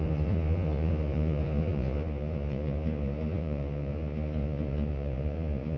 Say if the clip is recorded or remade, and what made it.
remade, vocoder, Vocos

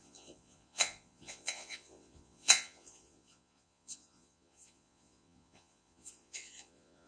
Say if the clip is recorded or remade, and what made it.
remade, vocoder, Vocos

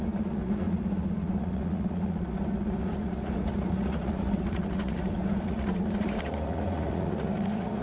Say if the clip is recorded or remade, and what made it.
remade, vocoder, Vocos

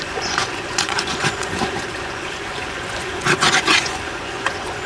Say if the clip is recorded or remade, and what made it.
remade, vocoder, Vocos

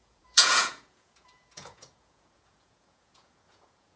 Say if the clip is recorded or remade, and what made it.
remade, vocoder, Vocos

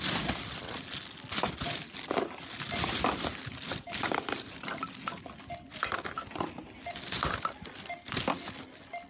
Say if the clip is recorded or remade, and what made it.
recorded